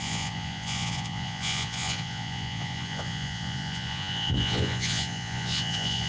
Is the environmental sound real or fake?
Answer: fake